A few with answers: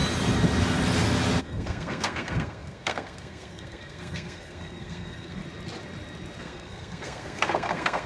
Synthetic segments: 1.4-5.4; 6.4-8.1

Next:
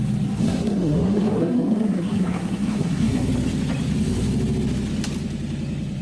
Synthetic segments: 0.4-3.3

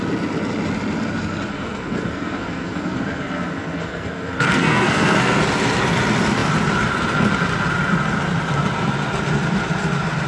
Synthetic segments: 1.5-5.4

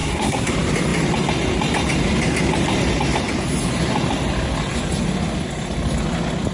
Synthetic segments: 0.0-0.5

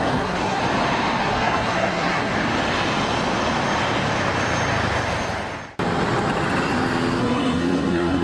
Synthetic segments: 0.0-0.6; 1.2-2.3; 7.2-8.2

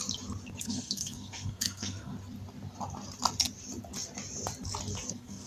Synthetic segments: 0.6-2.1; 5.1-5.5

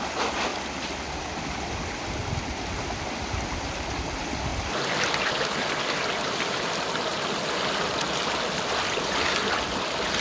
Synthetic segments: none